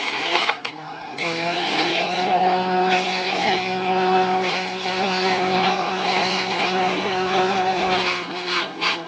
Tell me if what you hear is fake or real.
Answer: fake